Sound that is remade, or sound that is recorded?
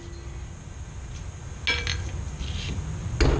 recorded